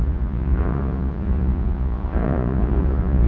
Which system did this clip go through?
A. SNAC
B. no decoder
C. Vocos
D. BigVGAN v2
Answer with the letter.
C